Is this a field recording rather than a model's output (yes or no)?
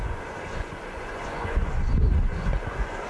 no